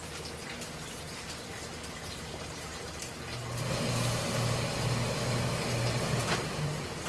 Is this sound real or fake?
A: real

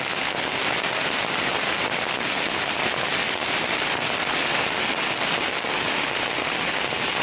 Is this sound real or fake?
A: real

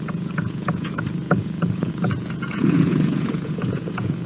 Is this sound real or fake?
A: fake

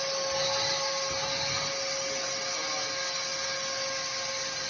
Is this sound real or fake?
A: real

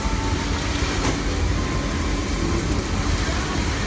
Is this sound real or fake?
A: real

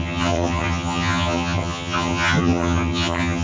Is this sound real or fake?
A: fake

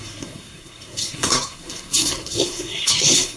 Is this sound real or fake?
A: fake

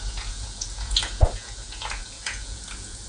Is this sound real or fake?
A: fake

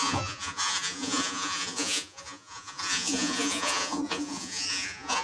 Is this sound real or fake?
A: fake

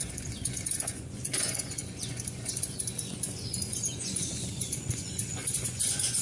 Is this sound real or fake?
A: fake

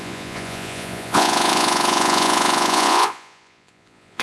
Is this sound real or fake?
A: fake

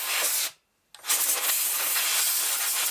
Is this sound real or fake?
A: real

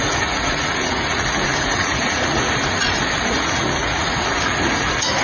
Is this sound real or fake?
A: fake